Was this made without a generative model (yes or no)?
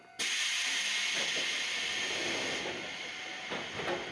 yes